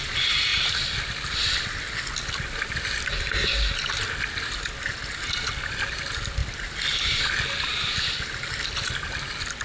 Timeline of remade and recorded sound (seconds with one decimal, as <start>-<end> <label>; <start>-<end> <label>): 0.0-6.4 recorded; 6.4-7.2 remade; 7.2-9.6 recorded